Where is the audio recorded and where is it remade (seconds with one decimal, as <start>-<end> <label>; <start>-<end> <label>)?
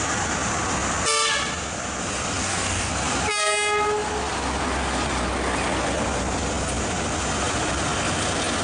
0.0-2.4 recorded; 2.4-2.9 remade; 2.9-8.6 recorded